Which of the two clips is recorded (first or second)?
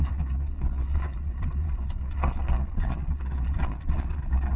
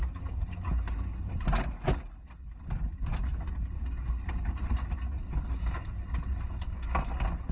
second